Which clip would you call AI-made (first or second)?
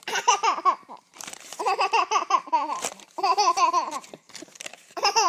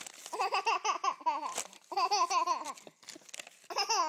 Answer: first